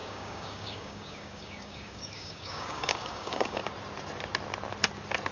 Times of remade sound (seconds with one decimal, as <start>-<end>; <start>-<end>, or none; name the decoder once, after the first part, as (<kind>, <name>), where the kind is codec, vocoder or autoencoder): 0.0-3.6 (codec, DAC)